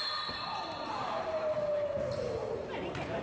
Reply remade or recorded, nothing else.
recorded